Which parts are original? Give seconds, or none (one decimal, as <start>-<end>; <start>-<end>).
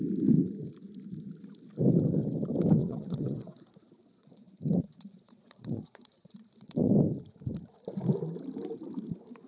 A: 0.0-2.8; 6.9-9.5